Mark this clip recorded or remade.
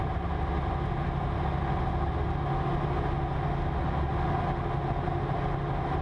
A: recorded